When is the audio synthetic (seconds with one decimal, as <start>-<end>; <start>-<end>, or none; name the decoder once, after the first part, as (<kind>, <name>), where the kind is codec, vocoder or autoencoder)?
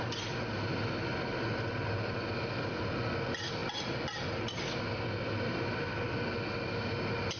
none